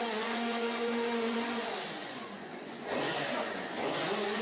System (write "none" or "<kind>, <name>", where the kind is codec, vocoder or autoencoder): vocoder, Vocos